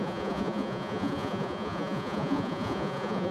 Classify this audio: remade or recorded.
remade